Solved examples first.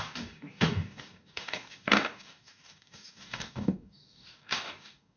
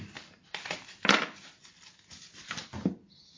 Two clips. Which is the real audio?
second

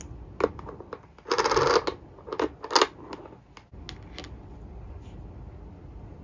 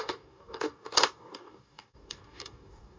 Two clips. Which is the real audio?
first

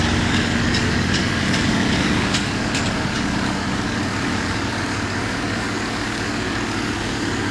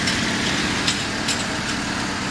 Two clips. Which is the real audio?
second